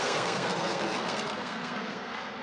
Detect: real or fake fake